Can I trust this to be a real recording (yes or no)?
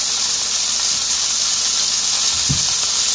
yes